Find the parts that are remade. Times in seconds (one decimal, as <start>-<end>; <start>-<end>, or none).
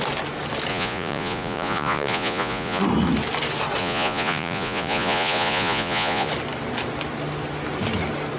0.7-2.8; 3.8-6.3